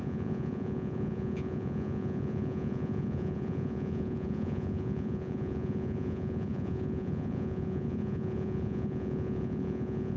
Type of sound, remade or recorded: remade